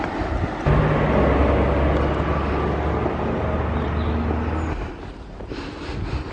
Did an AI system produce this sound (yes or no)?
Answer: no